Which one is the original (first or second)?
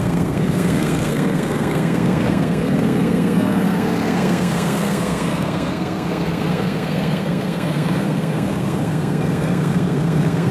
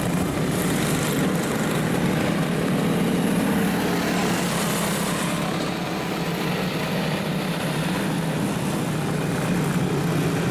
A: second